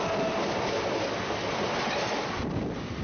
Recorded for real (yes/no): yes